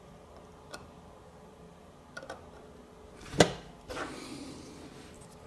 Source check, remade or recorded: recorded